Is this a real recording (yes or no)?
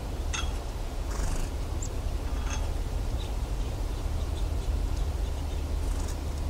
yes